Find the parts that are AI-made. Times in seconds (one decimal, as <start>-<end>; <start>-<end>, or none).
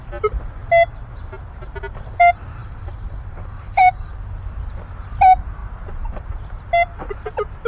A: 2.6-4.1